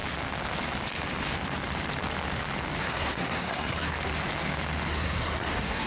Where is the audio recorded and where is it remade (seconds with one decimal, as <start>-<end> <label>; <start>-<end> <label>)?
0.0-2.8 recorded; 2.8-3.9 remade; 3.9-4.9 recorded; 4.9-5.9 remade